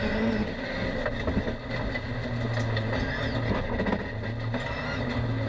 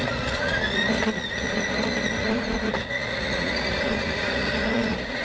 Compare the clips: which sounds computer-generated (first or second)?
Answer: second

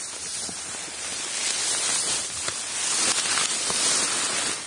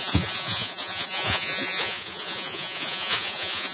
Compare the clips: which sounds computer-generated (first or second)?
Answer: second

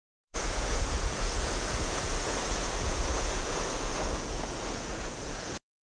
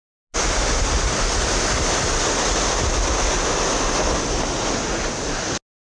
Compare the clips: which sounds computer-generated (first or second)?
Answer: first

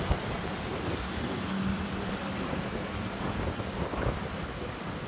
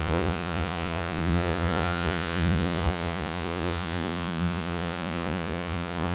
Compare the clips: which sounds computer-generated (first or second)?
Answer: second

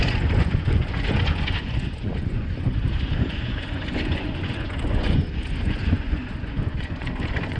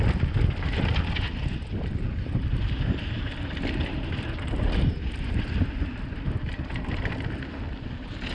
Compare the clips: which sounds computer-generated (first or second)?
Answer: first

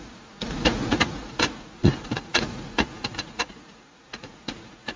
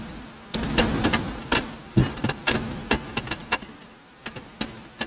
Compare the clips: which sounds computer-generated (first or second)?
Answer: first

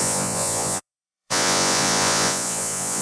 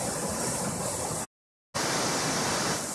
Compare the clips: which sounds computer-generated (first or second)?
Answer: first